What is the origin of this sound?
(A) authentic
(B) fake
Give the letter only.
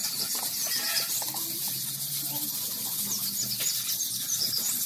A